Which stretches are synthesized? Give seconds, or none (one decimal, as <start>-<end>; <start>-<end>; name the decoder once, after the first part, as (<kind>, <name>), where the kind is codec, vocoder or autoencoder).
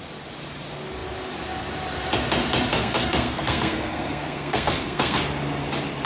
2.7-5.2 (codec, SNAC)